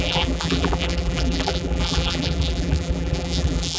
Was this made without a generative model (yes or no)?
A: no